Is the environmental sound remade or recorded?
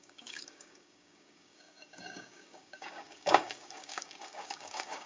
remade